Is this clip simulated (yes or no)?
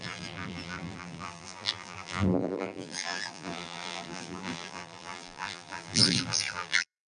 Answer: yes